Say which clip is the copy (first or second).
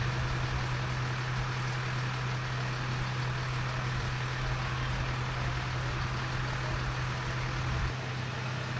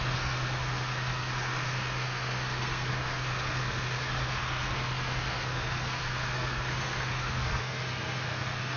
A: second